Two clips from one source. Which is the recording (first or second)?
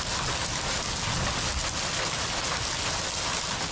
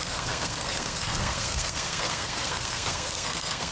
first